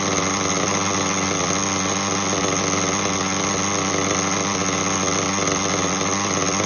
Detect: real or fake real